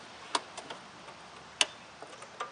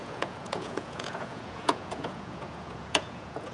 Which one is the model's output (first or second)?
second